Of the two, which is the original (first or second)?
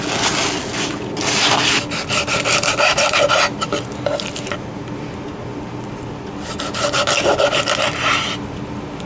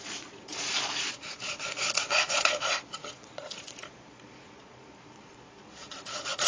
first